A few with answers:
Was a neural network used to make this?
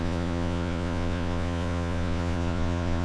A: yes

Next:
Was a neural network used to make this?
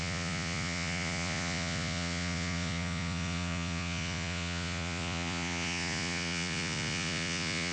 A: yes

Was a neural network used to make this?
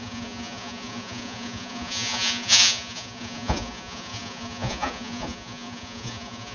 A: yes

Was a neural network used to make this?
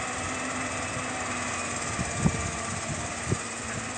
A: no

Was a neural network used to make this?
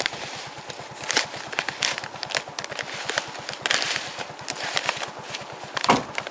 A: no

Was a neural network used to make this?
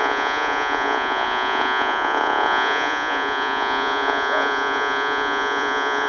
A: yes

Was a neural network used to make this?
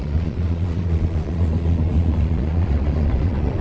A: yes